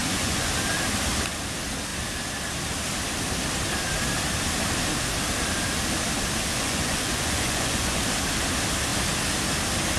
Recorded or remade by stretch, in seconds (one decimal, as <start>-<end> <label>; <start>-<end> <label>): 0.0-0.5 remade; 0.5-6.5 recorded; 6.5-8.0 remade; 8.0-10.0 recorded